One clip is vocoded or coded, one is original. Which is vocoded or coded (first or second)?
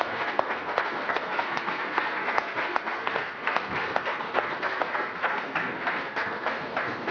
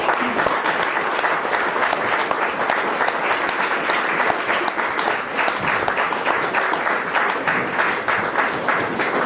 first